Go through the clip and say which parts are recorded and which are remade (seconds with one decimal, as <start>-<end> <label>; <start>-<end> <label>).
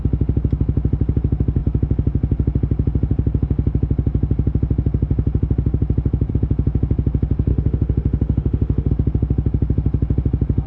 0.0-7.5 recorded; 7.5-8.9 remade; 8.9-10.7 recorded